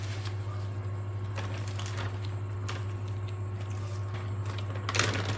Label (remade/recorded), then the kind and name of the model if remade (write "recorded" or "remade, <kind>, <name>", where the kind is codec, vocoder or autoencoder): recorded